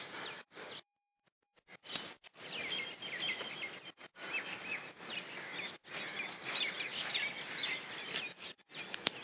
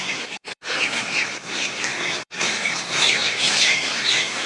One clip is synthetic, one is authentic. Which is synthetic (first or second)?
second